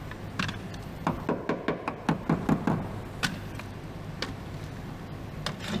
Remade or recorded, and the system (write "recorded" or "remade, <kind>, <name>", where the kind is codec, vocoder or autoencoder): recorded